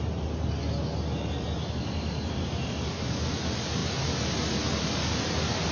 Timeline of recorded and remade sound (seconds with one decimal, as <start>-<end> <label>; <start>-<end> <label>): 0.0-5.7 recorded